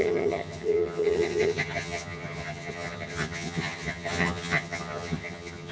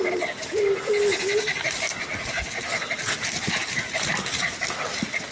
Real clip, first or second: second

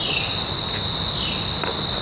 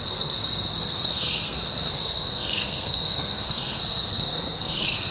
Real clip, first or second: first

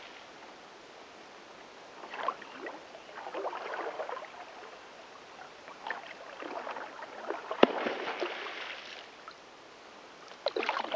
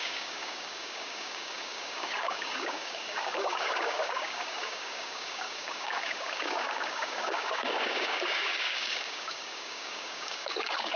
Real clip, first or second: first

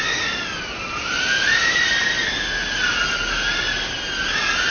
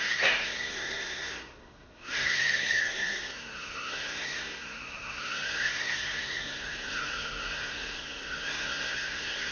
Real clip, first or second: first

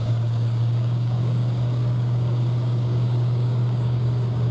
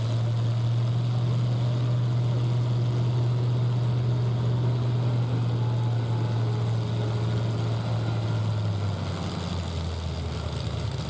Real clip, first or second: second